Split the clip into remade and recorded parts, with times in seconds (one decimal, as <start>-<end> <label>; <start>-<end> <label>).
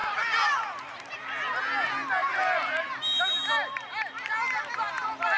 0.0-5.4 recorded